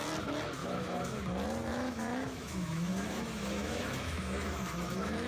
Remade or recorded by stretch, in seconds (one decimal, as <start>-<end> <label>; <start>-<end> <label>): 0.0-0.6 recorded; 0.6-1.2 remade; 1.2-1.7 recorded; 1.7-5.3 remade